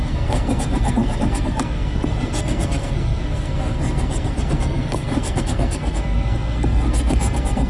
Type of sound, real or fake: fake